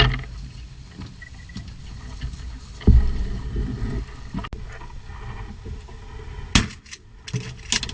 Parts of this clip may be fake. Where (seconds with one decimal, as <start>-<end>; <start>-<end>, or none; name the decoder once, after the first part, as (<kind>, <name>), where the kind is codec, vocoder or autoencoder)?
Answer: none